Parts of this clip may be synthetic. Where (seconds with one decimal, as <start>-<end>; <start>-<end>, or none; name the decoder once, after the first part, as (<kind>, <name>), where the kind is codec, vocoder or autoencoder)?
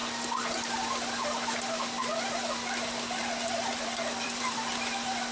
3.7-4.7 (vocoder, BigVGAN v2)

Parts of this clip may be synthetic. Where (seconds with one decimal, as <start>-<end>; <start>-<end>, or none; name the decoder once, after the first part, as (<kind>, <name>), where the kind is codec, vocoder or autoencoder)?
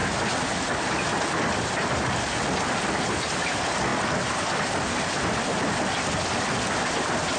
none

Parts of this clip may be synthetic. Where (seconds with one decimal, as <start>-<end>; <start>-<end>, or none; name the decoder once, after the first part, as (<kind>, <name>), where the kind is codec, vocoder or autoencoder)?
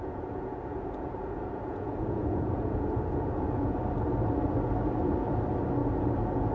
0.0-3.8 (vocoder, Vocos)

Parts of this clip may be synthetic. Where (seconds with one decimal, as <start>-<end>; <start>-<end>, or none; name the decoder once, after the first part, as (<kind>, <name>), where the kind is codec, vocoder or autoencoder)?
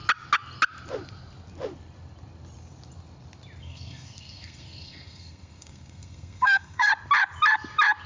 3.6-6.9 (codec, SNAC)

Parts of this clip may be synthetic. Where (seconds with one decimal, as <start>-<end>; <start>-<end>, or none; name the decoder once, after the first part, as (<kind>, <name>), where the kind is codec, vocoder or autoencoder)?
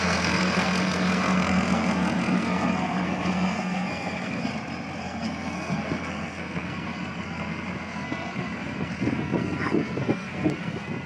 0.0-4.5 (codec, SNAC); 5.0-11.1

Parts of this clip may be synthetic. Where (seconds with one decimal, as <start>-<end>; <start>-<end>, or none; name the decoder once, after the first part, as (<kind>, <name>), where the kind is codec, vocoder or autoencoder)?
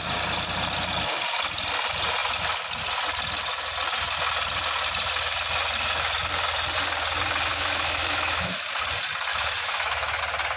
7.5-8.6 (autoencoder, DAC-VAE); 9.3-10.2